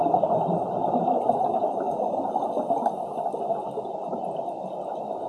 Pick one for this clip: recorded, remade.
recorded